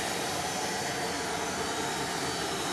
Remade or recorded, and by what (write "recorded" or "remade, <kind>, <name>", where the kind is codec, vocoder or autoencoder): recorded